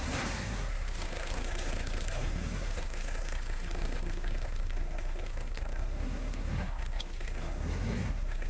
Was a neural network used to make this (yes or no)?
yes